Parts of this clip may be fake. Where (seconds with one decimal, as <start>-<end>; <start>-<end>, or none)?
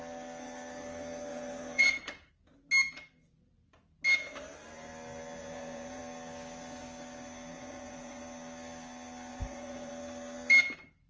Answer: 1.3-2.3; 5.4-6.0; 7.5-8.2; 9.3-9.9